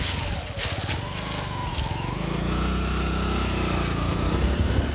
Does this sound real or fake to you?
real